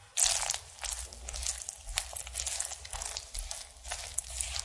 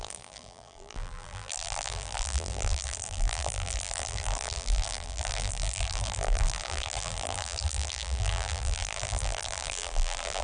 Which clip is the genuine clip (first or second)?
first